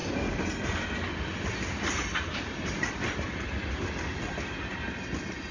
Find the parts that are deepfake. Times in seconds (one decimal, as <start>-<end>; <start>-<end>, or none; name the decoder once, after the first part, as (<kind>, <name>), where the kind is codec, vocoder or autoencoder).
none